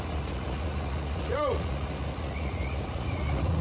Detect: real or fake fake